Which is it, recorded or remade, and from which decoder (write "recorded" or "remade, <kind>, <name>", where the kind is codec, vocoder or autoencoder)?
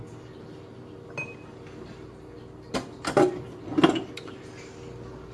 recorded